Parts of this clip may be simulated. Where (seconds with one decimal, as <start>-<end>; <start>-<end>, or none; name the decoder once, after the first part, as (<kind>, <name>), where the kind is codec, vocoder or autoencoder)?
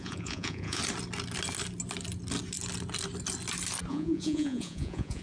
0.0-0.8 (vocoder, Vocos); 3.9-5.2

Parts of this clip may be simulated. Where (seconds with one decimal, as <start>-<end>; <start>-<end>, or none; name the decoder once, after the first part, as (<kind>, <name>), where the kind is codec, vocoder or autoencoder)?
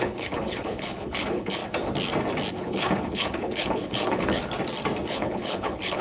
0.0-1.6 (codec, HILCodec); 2.5-4.4; 5.1-6.0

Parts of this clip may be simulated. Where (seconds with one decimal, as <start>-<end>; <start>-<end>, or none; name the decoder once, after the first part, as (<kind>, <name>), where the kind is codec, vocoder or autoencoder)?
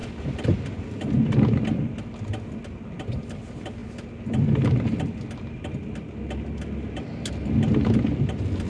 none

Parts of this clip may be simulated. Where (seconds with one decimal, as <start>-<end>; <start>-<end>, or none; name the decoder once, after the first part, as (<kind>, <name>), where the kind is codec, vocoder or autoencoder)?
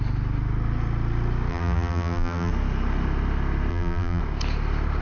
1.5-2.5 (vocoder, BigVGAN v2); 3.7-4.2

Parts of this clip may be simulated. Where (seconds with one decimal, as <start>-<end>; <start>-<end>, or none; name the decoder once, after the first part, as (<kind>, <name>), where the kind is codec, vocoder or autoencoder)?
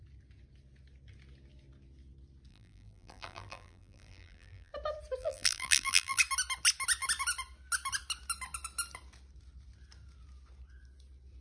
2.5-4.7 (vocoder, BigVGAN v2); 5.2-6.2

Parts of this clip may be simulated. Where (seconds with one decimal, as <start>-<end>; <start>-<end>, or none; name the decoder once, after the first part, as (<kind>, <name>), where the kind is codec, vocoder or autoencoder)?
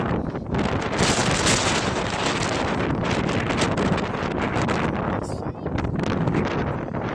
none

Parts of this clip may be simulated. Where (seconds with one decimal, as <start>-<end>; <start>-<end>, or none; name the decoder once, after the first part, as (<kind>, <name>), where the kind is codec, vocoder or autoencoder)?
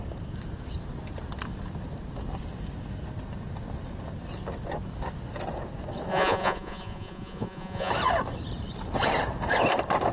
6.1-7.9 (vocoder, Vocos)